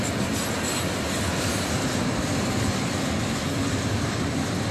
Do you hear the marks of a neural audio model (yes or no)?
no